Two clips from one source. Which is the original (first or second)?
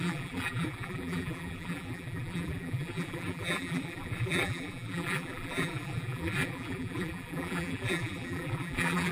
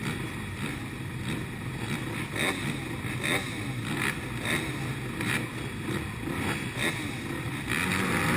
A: second